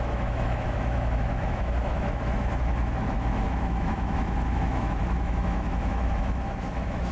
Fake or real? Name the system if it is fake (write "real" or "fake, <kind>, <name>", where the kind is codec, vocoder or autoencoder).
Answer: fake, autoencoder, DAC-VAE